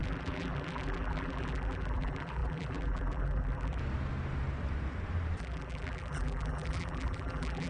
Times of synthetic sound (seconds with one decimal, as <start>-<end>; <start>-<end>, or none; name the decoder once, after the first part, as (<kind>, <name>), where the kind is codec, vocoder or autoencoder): 0.0-3.8 (vocoder, BigVGAN v2); 5.4-7.7